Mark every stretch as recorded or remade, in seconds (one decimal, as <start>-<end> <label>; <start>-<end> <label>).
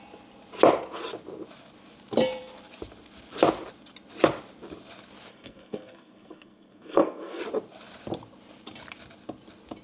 0.0-5.3 recorded; 5.3-7.4 remade; 7.4-9.8 recorded